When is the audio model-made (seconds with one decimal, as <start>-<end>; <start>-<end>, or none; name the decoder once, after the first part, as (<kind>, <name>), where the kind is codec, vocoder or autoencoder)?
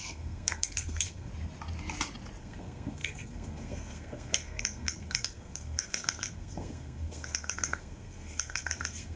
0.0-1.3 (codec, SNAC); 2.4-9.2